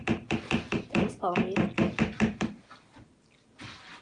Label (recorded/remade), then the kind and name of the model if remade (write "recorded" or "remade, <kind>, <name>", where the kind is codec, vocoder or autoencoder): recorded